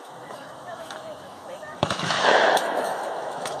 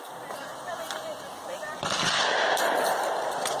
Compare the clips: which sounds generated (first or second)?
first